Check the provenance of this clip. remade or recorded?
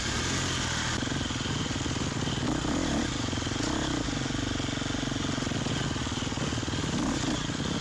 recorded